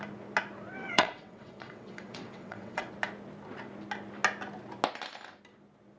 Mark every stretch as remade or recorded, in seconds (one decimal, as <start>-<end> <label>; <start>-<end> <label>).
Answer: 0.0-0.8 recorded; 0.8-2.9 remade; 2.9-6.0 recorded